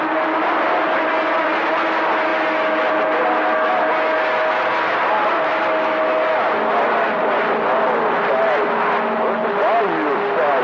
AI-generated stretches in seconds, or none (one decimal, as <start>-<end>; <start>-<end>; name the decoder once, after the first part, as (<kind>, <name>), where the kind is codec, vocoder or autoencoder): none